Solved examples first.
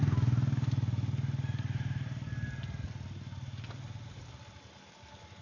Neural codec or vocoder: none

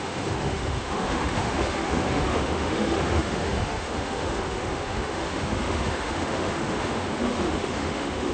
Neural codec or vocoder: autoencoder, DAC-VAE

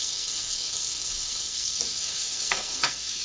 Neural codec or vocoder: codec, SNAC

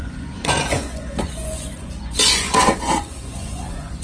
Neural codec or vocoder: vocoder, Vocos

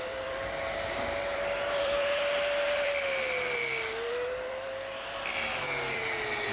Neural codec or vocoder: vocoder, BigVGAN v2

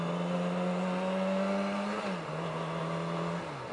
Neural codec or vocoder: none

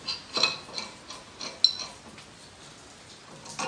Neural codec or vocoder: none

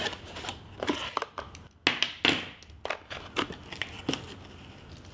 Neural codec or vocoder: none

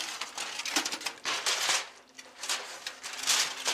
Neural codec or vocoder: none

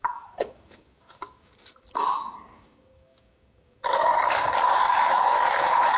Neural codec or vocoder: codec, DAC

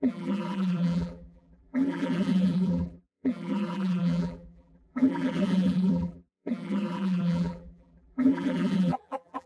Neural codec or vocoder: vocoder, BigVGAN v2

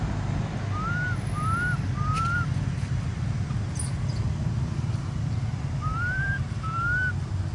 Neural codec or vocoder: none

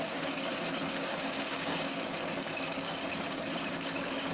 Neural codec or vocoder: codec, DAC